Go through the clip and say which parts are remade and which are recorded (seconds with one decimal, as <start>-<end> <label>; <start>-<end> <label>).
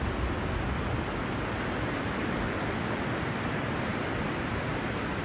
0.0-5.2 recorded